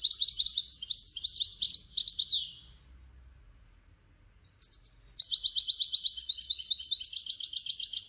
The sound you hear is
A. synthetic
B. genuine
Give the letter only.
B